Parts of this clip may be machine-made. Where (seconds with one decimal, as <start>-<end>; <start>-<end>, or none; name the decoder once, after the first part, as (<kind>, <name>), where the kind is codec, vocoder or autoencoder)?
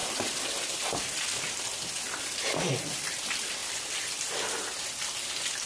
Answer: 0.0-2.7 (vocoder, BigVGAN v2); 3.6-4.3